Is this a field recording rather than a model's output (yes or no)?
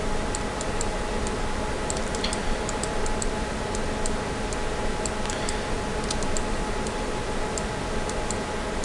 yes